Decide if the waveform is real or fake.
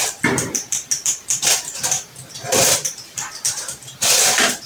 fake